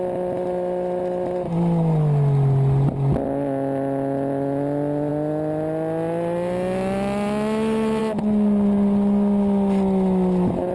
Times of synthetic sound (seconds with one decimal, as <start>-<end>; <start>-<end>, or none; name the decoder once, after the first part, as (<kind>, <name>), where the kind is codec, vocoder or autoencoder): none

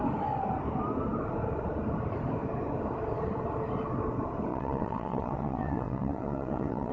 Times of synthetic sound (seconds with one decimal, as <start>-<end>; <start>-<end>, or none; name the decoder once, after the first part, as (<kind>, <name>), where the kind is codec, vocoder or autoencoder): 4.5-6.9 (vocoder, WaveNeXt)

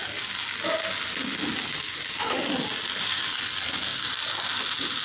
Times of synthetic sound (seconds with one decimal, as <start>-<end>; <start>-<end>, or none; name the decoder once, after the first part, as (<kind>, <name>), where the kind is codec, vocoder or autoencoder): 3.9-4.6 (vocoder, BigVGAN v2)

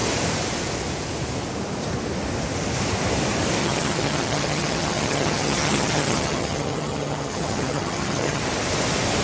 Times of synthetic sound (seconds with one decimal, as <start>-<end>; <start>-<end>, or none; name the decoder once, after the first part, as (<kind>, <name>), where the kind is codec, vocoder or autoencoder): 3.6-8.4 (vocoder, HiFi-GAN)

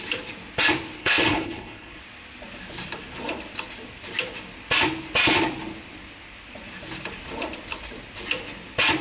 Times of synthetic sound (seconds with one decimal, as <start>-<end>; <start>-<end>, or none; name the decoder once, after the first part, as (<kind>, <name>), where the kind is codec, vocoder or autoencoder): 1.0-2.0 (codec, HILCodec)

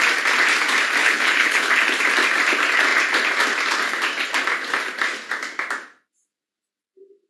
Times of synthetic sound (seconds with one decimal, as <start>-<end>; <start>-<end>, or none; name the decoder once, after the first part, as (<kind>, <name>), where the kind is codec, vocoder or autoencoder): 1.0-1.7 (codec, HILCodec)

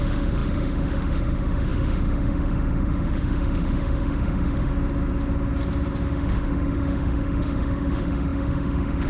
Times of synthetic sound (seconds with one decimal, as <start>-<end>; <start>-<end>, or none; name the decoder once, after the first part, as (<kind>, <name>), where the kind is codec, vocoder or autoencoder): 0.0-4.7 (autoencoder, DAC-VAE); 6.1-9.1